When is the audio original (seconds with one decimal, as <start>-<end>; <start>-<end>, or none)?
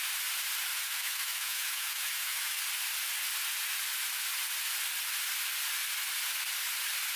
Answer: 0.0-0.7; 2.6-7.2